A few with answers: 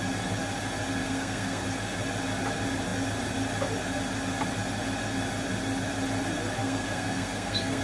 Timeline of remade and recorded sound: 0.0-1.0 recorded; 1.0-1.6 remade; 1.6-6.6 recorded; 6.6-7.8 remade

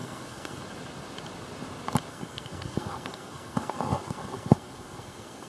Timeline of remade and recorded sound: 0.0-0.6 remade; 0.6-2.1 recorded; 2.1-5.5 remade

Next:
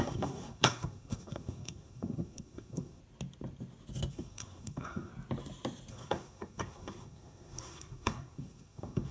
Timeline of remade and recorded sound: 0.0-3.0 remade; 3.0-4.1 recorded; 4.1-5.1 remade; 5.1-5.9 recorded; 5.9-9.1 remade